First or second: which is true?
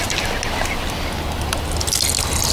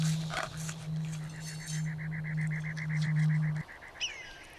first